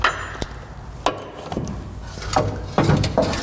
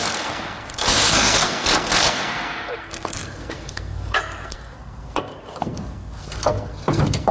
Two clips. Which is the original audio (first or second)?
first